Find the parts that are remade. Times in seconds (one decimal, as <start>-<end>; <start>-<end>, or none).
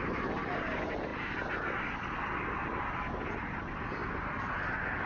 none